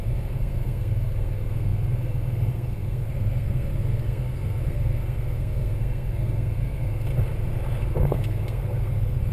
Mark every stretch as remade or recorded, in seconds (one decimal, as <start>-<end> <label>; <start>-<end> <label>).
0.0-7.1 remade; 7.1-7.8 recorded; 7.8-9.3 remade